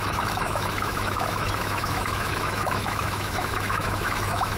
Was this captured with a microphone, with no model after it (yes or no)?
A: no